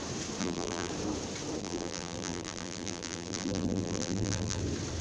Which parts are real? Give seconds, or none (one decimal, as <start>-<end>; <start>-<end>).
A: 0.0-0.4; 0.9-1.6; 4.6-5.0